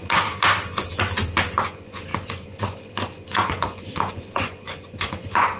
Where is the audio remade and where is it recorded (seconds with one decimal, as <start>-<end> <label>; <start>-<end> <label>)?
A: 0.0-1.6 recorded; 1.6-5.6 remade